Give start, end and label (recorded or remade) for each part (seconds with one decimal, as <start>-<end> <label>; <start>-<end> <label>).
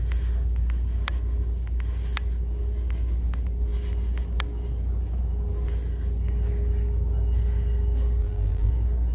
0.0-8.2 recorded; 8.2-8.7 remade; 8.7-9.1 recorded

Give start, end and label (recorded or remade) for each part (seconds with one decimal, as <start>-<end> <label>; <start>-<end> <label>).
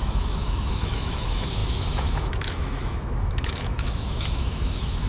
0.0-5.1 remade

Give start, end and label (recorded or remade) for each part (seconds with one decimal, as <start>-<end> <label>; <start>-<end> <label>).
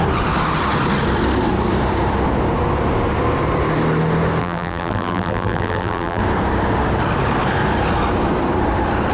0.0-4.4 recorded; 4.4-6.2 remade; 6.2-9.1 recorded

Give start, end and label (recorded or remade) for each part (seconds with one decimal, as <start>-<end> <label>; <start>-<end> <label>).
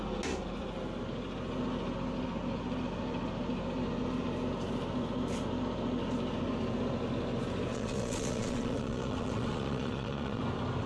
0.0-7.7 recorded; 7.7-10.4 remade; 10.4-10.9 recorded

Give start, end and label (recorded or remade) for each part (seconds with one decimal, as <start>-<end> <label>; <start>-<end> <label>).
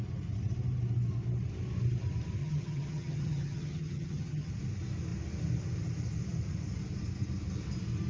0.0-2.4 recorded; 2.4-4.5 remade; 4.5-8.1 recorded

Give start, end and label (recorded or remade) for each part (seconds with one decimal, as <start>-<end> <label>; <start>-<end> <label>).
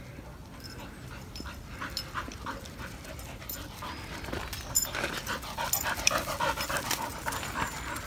0.0-7.1 remade; 7.1-8.1 recorded